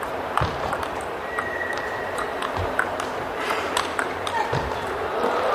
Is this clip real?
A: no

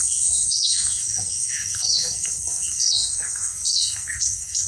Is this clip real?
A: no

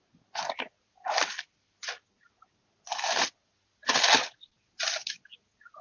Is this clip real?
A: yes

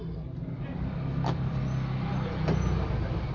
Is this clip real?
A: yes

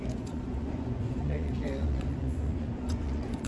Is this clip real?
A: no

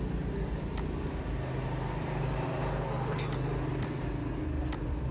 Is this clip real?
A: yes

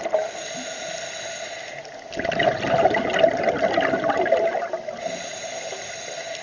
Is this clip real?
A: yes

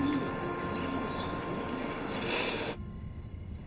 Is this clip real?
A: yes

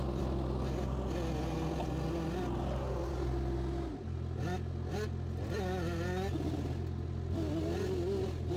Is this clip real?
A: yes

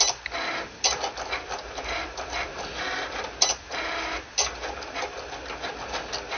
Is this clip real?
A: yes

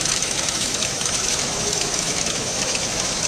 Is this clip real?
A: no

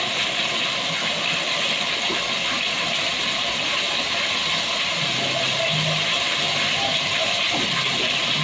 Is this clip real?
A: yes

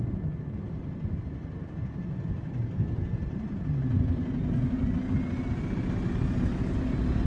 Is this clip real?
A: yes